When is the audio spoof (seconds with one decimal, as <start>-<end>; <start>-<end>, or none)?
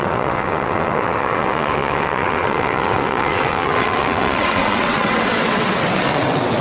0.0-6.6